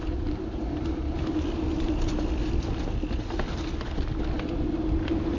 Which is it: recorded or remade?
recorded